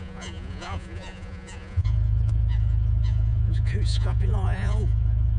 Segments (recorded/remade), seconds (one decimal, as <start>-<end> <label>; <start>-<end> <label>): 0.0-5.4 remade